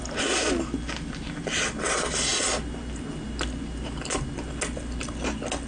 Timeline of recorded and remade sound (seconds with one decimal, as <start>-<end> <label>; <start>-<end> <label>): 0.0-5.7 recorded